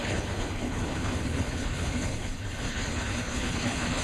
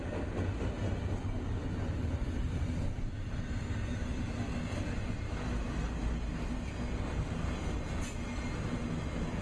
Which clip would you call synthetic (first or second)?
first